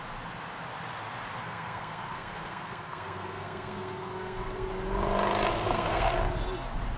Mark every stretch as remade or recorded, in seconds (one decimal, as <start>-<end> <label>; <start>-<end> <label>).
0.0-1.4 recorded; 1.4-4.7 remade; 4.7-5.5 recorded; 5.5-6.1 remade; 6.1-7.0 recorded